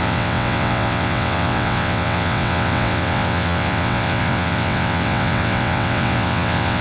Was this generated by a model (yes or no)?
yes